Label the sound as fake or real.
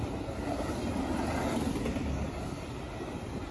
real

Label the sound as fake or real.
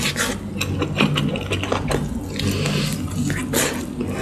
real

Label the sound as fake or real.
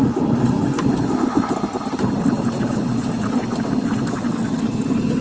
real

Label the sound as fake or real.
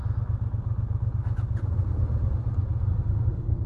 real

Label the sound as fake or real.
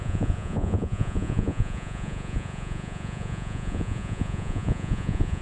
fake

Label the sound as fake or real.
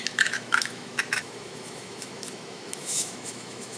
fake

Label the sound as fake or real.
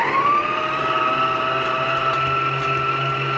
real